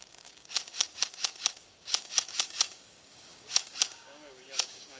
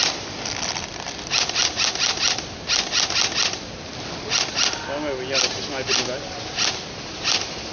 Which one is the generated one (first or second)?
first